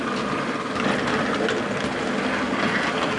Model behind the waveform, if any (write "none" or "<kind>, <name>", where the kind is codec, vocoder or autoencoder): none